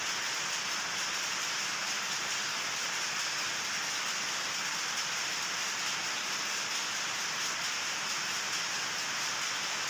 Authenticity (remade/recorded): recorded